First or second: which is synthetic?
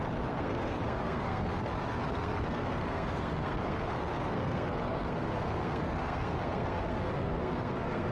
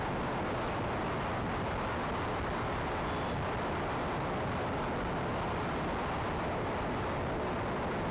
first